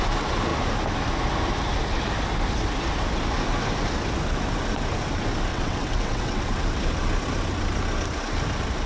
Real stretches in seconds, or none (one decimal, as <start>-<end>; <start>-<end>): 0.0-5.5; 6.5-8.9